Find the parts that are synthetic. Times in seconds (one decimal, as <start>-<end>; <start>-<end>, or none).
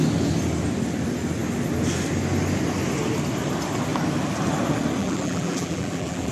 5.0-6.3